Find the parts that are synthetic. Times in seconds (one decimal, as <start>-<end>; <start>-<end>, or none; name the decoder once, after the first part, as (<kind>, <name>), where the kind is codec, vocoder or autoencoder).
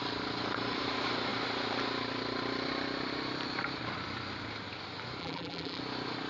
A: 5.2-5.8 (vocoder, BigVGAN v2)